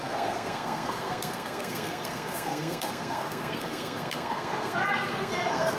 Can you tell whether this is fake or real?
fake